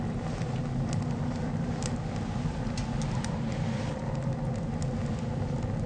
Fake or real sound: real